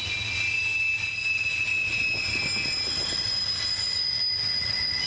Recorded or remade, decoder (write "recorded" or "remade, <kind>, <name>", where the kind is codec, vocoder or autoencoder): recorded